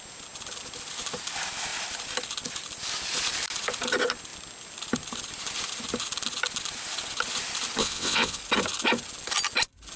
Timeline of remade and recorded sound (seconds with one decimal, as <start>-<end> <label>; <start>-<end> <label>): 0.0-7.8 recorded; 7.8-8.4 remade; 8.4-10.0 recorded